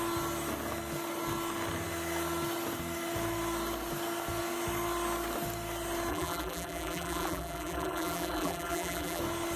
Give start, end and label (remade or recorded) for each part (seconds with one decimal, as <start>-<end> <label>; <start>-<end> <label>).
0.0-6.1 recorded; 6.1-9.2 remade; 9.2-9.6 recorded